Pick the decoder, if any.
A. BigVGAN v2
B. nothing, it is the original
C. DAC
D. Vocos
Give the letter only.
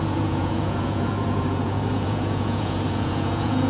D